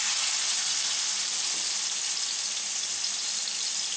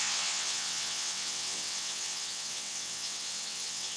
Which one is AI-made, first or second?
second